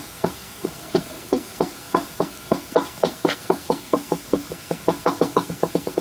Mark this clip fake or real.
fake